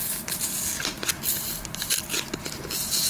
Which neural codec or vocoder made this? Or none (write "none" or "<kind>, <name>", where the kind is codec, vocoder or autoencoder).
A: none